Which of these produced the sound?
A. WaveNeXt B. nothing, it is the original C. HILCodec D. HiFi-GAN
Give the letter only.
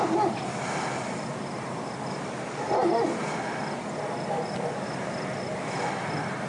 B